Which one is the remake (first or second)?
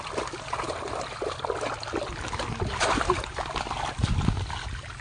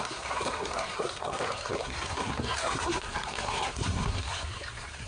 second